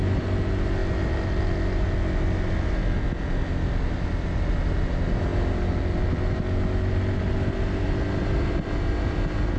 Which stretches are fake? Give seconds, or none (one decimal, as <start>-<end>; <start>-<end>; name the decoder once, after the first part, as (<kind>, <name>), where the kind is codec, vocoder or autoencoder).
none